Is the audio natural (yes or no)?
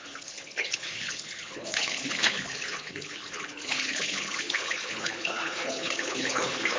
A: no